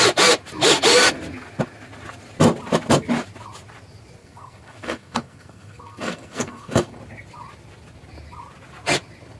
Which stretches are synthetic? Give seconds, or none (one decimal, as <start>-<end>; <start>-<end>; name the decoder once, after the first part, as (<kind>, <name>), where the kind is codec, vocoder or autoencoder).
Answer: 4.2-7.0 (codec, SNAC)